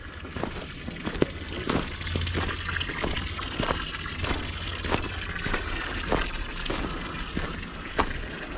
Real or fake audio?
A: real